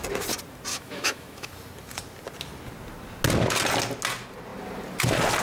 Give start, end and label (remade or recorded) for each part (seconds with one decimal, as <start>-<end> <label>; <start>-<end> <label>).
0.0-0.7 recorded; 0.7-1.5 remade; 1.5-5.4 recorded